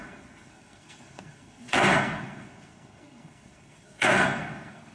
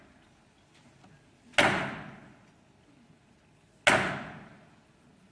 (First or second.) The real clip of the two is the second